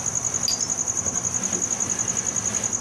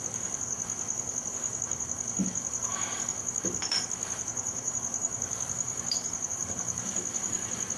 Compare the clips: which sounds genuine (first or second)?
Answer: first